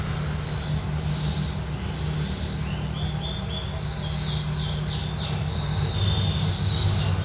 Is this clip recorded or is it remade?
recorded